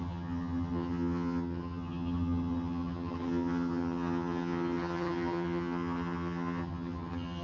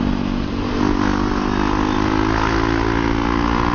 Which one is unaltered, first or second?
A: second